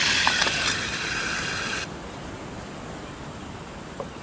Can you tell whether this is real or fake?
real